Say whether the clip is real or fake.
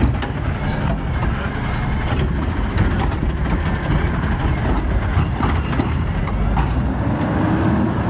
real